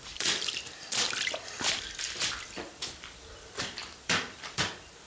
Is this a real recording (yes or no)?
no